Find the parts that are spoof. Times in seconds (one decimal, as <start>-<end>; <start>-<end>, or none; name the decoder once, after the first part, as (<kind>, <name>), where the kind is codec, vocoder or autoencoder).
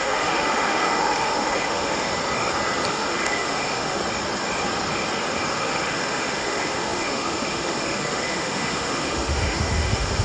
0.0-2.1 (autoencoder, DAC-VAE); 2.9-4.0; 5.5-10.2